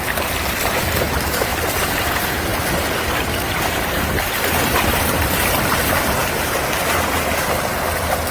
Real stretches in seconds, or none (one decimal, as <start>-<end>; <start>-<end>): 2.5-3.8

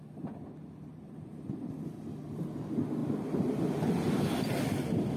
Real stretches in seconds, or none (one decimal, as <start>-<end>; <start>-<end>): 0.0-0.9; 1.7-5.2

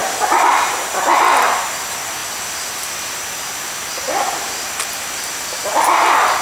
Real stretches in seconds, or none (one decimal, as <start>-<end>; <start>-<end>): 1.0-6.4

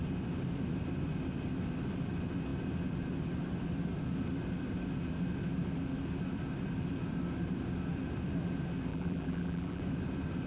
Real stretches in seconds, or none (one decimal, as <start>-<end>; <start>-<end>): 0.0-8.9; 9.8-10.5

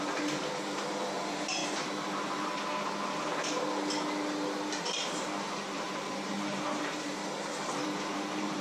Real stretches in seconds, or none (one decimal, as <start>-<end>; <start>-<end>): 1.6-4.8

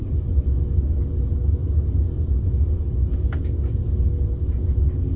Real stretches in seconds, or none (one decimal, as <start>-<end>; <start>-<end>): 0.0-5.2